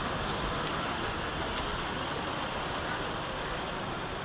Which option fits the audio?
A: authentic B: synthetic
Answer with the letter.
A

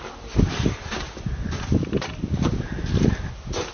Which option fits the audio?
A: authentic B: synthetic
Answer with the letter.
A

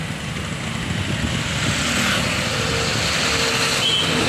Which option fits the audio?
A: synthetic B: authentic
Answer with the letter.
B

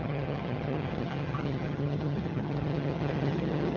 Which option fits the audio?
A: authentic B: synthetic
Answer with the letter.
B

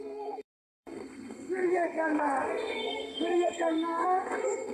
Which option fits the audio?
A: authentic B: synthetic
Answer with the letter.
B